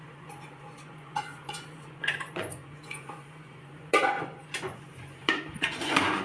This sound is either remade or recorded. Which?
remade